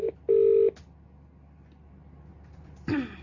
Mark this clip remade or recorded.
recorded